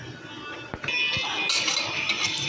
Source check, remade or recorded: recorded